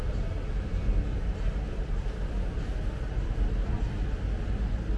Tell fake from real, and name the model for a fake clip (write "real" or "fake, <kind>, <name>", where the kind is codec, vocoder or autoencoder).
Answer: real